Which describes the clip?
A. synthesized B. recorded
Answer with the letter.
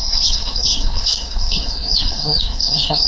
A